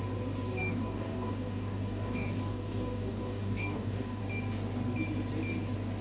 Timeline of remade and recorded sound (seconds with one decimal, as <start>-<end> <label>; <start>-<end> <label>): 0.0-0.6 recorded; 0.6-4.2 remade; 4.2-6.0 recorded